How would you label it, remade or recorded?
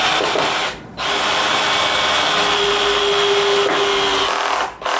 recorded